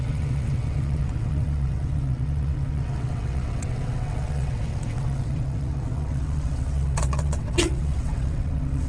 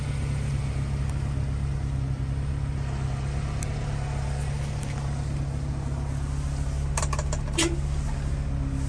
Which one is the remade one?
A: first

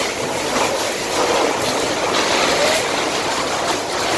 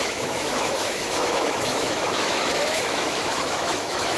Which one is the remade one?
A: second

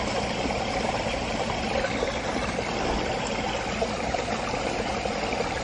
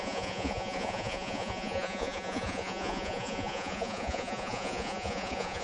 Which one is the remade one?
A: second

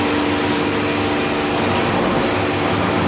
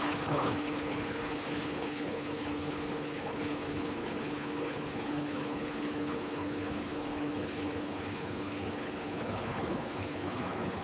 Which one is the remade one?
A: second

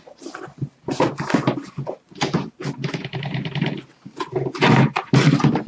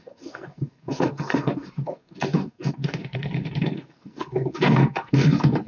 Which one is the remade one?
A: second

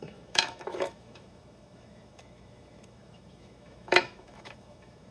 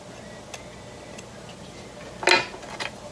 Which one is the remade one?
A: first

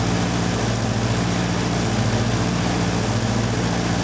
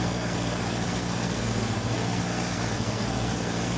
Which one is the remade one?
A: second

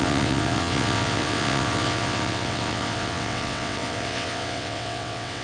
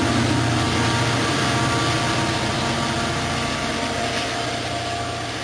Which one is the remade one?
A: first